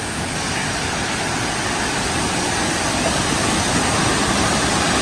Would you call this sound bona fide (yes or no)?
yes